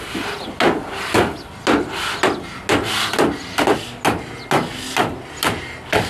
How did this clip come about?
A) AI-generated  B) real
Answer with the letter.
B